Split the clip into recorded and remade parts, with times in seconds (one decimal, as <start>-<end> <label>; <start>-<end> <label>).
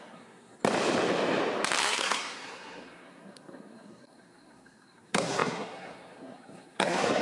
0.0-0.6 remade; 0.6-1.8 recorded; 1.8-7.2 remade